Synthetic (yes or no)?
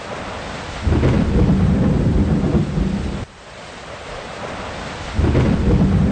no